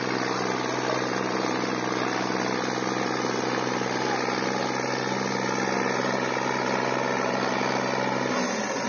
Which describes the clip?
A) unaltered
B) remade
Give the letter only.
A